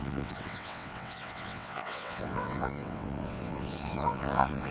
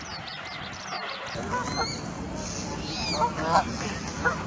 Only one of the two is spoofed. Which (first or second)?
first